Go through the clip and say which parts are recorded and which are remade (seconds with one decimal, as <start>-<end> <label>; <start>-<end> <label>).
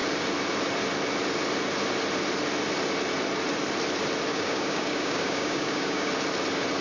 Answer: 0.0-4.3 recorded; 4.3-6.1 remade; 6.1-6.8 recorded